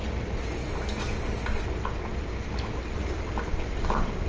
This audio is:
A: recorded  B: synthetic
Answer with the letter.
B